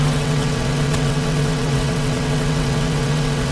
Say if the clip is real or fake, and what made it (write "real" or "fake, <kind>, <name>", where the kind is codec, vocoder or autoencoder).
fake, vocoder, WaveNeXt